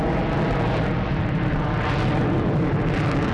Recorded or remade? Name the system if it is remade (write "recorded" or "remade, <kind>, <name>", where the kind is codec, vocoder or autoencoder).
recorded